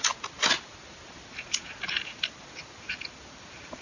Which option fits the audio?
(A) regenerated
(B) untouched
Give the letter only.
B